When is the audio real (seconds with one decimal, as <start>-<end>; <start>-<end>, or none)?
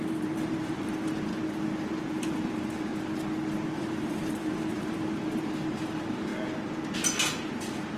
1.3-2.0; 2.9-3.8; 6.3-7.5